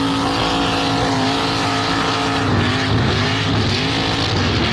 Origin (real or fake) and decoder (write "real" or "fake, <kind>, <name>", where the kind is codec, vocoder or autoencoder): real